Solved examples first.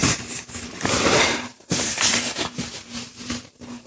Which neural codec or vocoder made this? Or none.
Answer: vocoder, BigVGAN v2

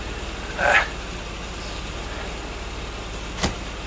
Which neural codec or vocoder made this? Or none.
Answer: none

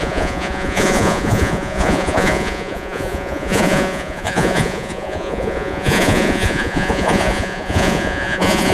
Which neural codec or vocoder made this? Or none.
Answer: vocoder, Vocos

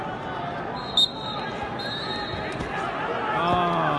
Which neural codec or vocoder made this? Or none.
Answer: none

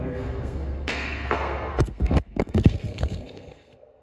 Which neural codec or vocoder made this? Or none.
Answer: codec, SNAC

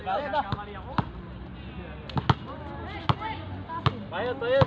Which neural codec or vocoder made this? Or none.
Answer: none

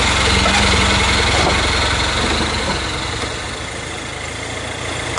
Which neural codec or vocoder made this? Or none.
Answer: none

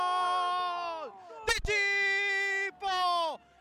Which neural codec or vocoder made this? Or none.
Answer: none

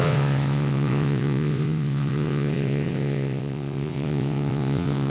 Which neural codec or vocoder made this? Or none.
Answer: vocoder, WaveNeXt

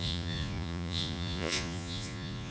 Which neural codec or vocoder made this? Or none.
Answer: vocoder, Vocos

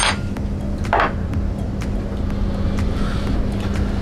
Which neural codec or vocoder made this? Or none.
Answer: none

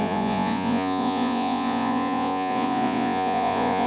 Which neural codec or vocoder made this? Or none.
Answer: vocoder, Vocos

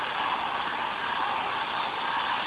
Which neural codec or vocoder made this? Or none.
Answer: none